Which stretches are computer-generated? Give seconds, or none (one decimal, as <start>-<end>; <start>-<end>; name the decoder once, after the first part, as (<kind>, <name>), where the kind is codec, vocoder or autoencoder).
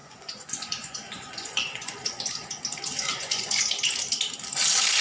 0.0-2.1 (vocoder, Vocos); 3.1-3.6